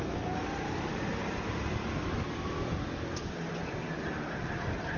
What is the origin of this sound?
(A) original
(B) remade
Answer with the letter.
A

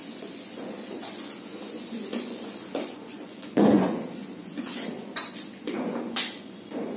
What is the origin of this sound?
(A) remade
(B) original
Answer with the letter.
A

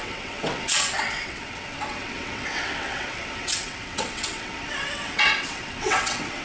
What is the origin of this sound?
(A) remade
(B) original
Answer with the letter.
A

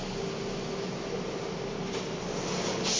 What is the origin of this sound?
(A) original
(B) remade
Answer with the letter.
A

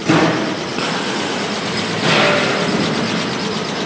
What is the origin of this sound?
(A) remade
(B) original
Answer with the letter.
B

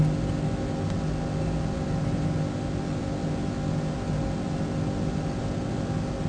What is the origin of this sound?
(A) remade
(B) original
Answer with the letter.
B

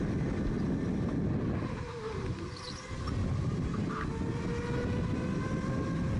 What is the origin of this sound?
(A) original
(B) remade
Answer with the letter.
A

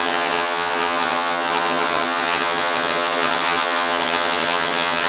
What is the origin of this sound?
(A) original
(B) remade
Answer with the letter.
B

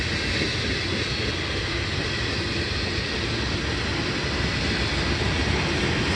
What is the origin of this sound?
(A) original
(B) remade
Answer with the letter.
A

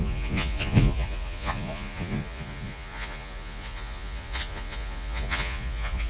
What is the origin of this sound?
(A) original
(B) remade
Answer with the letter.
B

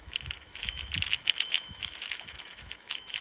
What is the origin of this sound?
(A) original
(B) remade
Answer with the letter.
B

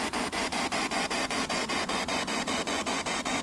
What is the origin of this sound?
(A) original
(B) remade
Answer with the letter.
B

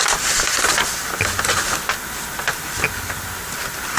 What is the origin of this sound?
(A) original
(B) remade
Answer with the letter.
B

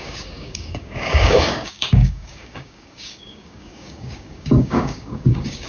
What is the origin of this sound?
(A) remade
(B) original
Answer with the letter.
A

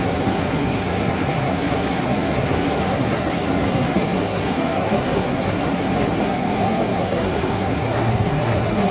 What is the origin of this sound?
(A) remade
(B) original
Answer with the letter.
A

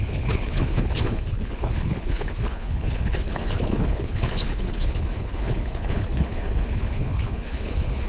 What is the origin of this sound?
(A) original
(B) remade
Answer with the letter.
B